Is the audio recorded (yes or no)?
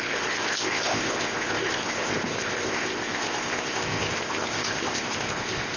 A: no